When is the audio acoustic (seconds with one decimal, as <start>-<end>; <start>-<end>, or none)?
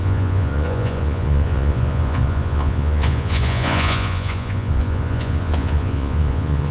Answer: none